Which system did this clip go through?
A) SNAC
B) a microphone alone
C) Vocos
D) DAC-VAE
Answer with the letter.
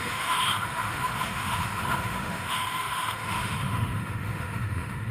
D